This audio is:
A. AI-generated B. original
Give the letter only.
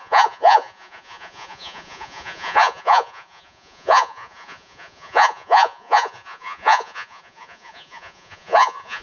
A